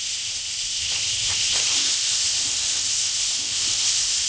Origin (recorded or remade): remade